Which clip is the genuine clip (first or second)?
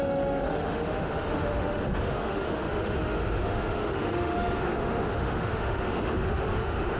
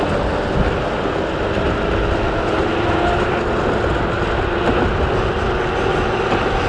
second